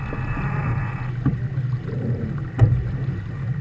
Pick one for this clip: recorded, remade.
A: recorded